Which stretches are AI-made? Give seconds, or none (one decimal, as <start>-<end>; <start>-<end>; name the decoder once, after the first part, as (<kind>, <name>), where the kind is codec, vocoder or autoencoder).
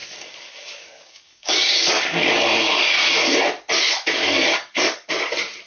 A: 0.0-3.4 (codec, DAC); 4.2-5.1